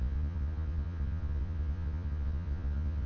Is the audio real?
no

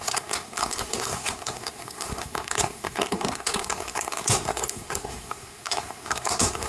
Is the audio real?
no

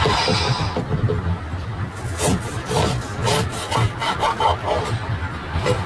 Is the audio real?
yes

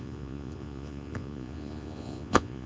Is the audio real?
no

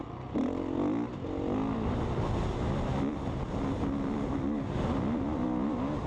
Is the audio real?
yes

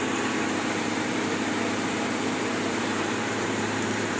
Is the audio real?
no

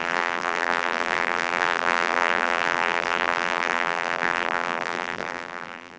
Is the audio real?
no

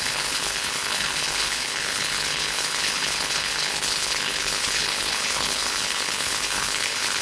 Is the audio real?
no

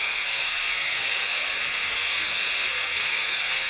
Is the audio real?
no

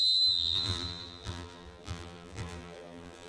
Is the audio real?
no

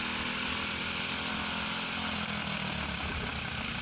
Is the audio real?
yes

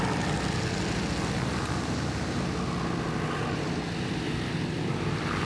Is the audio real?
yes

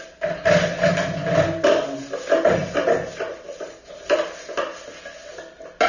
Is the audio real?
yes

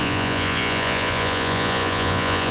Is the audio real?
no